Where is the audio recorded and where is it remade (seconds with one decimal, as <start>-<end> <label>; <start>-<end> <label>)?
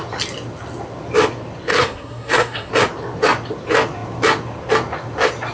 0.0-1.7 recorded; 1.7-2.7 remade; 2.7-5.5 recorded